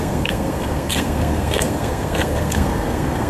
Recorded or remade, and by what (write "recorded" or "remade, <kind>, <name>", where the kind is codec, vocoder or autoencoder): remade, codec, SNAC